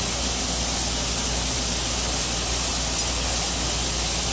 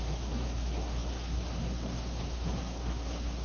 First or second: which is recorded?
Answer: first